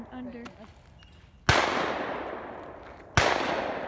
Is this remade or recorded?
recorded